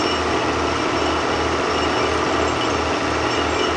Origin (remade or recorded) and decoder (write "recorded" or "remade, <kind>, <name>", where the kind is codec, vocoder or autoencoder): recorded